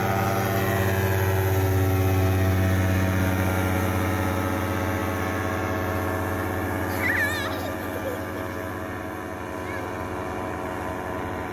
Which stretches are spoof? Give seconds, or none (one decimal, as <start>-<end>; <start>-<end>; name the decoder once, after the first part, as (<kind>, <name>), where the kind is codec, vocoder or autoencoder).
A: none